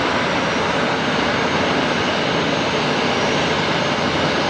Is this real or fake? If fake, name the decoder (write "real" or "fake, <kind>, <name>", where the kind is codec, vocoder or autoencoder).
real